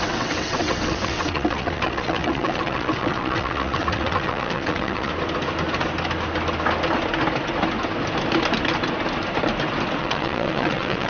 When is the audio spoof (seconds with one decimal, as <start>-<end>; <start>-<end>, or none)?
0.0-5.1; 10.0-11.1